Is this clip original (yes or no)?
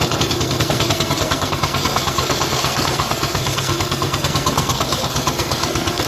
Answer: no